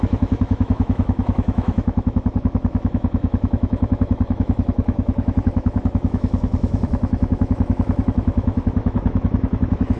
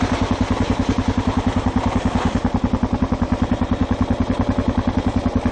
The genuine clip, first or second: second